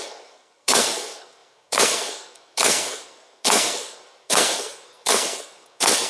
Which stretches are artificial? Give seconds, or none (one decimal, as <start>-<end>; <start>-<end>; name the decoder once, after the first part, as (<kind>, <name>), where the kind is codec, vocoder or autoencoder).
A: 0.0-6.1 (codec, SNAC)